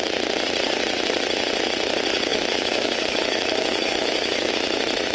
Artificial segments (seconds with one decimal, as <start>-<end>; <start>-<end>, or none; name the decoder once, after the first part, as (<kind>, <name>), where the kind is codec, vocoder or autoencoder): 2.3-4.5 (autoencoder, DAC-VAE)